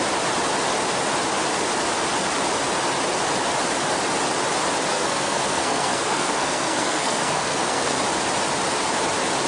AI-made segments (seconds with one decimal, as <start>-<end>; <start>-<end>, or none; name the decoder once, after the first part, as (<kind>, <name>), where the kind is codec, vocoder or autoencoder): 4.9-8.0 (codec, SNAC)